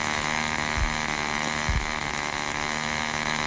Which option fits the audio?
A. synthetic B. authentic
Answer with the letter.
A